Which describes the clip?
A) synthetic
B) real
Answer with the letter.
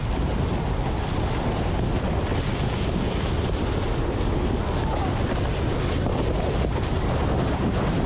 B